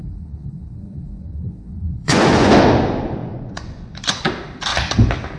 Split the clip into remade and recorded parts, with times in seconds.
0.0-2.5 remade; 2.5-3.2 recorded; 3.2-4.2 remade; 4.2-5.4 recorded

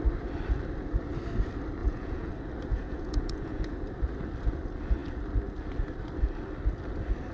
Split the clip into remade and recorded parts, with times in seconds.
0.0-1.8 recorded; 1.8-2.3 remade; 2.3-2.7 recorded; 2.7-3.7 remade; 3.7-7.3 recorded

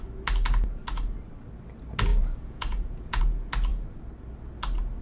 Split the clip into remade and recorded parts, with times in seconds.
0.0-2.1 recorded; 2.1-3.2 remade; 3.2-5.0 recorded

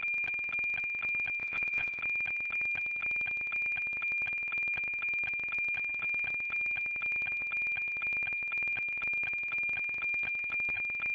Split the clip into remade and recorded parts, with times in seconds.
0.0-1.4 recorded; 1.4-2.0 remade; 2.0-11.1 recorded

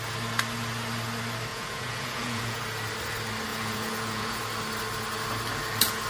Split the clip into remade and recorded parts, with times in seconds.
0.0-1.5 recorded; 1.5-2.6 remade; 2.6-3.5 recorded; 3.5-4.4 remade; 4.4-6.1 recorded

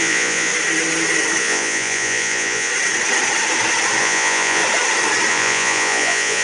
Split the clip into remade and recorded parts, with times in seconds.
0.0-0.5 remade; 0.5-1.4 recorded; 1.4-2.7 remade; 2.7-4.0 recorded; 4.0-4.6 remade; 4.6-5.3 recorded; 5.3-6.4 remade

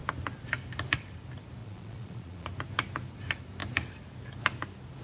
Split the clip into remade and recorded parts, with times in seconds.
0.0-1.6 recorded; 1.6-2.5 remade; 2.5-5.0 recorded

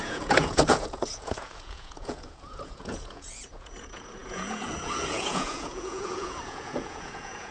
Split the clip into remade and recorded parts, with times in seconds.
0.0-7.5 remade